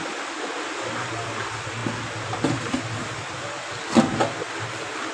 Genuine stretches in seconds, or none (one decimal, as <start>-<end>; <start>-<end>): none